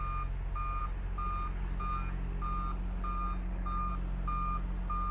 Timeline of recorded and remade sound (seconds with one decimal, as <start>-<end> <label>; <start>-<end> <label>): 0.0-5.1 recorded